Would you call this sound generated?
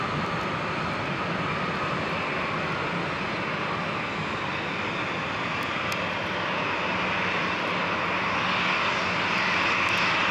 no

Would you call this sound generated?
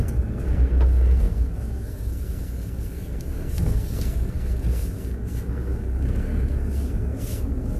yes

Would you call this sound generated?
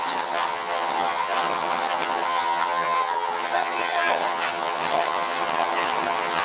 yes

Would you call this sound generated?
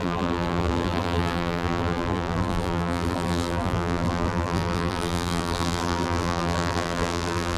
yes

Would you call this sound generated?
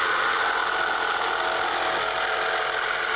no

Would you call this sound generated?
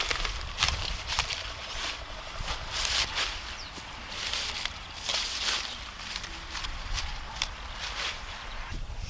yes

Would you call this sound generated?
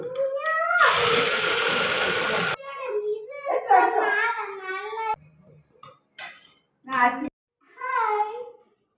no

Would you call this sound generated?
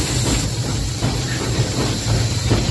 no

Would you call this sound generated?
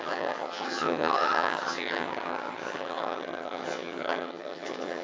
yes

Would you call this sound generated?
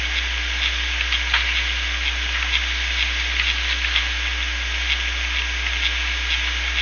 no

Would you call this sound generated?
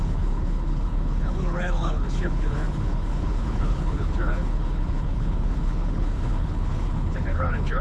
yes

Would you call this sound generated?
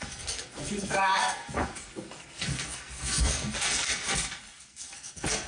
yes